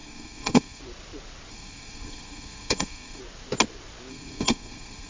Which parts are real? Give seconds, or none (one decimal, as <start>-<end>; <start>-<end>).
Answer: 0.8-1.5; 3.2-4.1